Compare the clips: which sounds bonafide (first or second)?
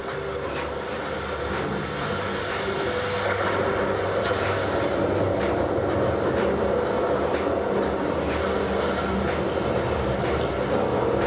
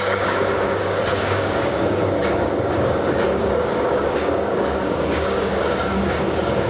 first